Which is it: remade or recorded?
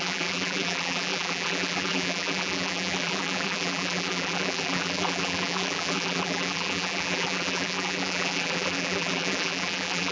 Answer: remade